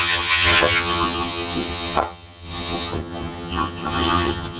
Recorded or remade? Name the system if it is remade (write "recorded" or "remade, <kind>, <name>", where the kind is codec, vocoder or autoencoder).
remade, vocoder, HiFi-GAN